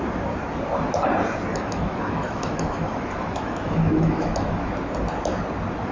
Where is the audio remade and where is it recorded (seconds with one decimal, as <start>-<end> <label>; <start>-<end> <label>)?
0.0-1.5 recorded; 1.5-4.7 remade; 4.7-5.9 recorded